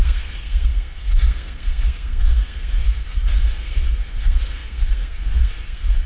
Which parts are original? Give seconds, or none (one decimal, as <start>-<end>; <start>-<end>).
none

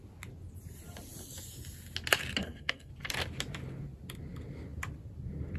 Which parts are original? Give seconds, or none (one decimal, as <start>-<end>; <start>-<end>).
0.0-2.4; 2.9-5.6